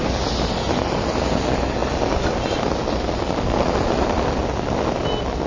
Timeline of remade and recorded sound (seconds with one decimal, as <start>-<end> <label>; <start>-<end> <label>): 0.0-5.5 recorded